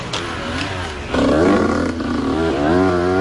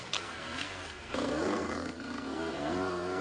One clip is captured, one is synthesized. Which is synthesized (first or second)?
second